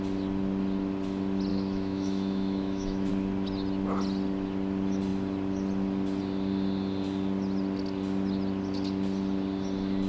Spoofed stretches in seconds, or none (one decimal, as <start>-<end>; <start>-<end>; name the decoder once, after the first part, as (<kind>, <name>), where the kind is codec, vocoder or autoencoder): 1.5-3.1 (autoencoder, DAC-VAE)